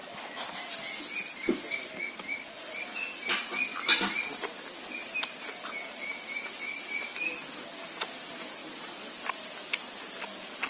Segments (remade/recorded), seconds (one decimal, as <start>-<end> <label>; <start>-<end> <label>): 0.0-10.7 recorded